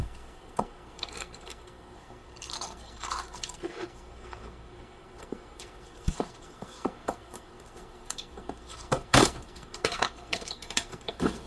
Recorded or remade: remade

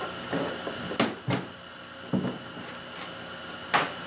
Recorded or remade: recorded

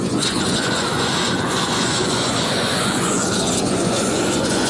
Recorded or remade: remade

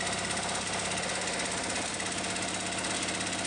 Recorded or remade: recorded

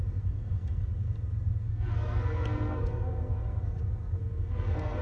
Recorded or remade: remade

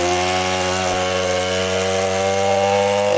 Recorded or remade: recorded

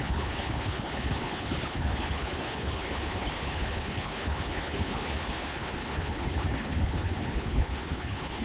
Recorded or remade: remade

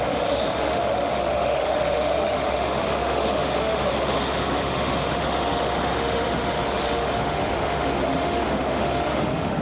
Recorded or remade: remade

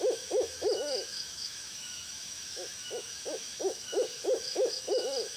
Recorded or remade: remade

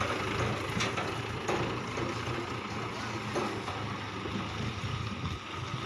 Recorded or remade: recorded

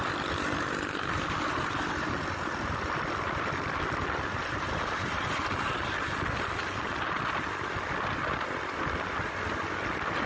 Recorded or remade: recorded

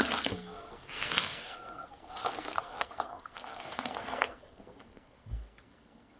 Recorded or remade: remade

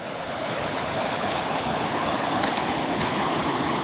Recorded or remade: remade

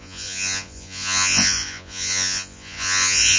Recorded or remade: remade